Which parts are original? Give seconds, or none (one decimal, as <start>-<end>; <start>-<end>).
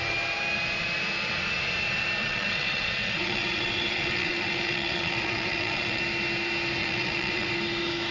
0.0-2.2; 6.0-6.8; 7.5-8.1